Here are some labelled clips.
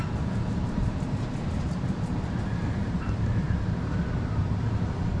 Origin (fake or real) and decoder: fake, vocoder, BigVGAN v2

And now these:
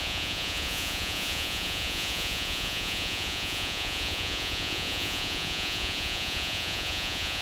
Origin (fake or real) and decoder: fake, vocoder, Vocos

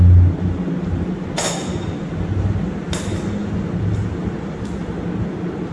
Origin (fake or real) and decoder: real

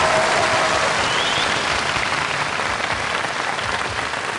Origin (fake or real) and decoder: real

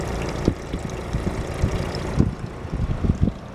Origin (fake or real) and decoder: fake, vocoder, BigVGAN v2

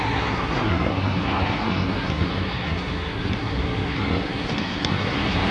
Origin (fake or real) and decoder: fake, codec, SNAC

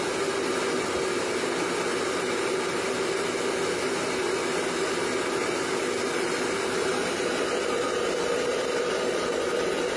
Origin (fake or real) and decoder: real